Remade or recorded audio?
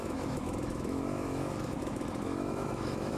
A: remade